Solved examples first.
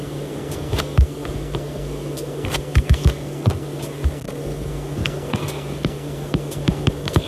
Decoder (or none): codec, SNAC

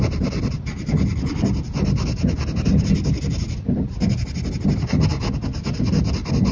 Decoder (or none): none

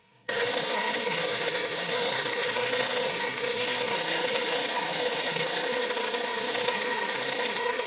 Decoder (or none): codec, SNAC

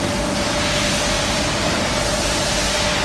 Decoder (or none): none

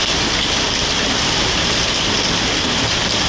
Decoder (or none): none